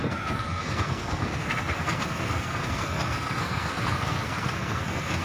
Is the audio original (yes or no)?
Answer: no